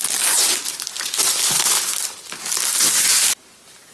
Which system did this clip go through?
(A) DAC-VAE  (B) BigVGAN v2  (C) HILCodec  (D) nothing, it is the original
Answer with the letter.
D